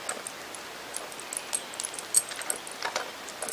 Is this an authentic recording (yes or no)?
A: yes